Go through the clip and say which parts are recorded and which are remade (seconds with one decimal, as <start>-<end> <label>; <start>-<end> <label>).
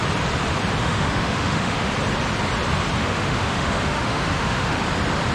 0.0-0.8 recorded; 0.8-1.9 remade; 1.9-3.0 recorded; 3.0-4.8 remade; 4.8-5.3 recorded